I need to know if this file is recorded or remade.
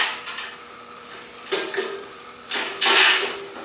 remade